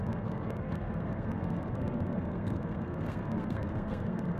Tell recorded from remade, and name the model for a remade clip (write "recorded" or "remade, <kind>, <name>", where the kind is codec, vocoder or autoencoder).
remade, codec, SNAC